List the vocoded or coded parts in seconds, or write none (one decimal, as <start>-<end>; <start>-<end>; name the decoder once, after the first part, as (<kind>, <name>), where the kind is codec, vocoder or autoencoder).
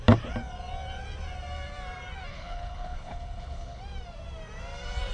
2.3-3.8 (codec, HILCodec)